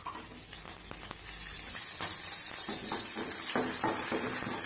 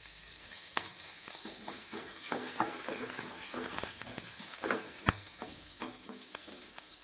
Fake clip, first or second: second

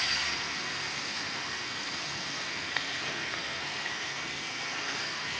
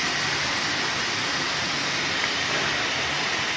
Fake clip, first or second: first